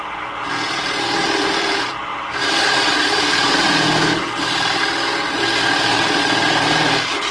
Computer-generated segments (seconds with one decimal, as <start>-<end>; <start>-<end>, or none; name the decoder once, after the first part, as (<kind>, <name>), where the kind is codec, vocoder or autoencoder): 2.1-4.8 (vocoder, BigVGAN v2)